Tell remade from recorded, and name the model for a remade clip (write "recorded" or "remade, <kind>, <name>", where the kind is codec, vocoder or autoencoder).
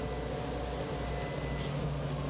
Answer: recorded